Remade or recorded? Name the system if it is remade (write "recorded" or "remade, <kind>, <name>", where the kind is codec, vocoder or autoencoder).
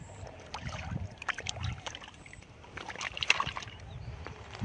remade, vocoder, BigVGAN v2